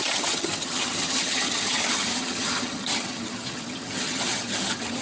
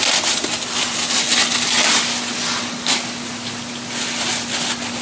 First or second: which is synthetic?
first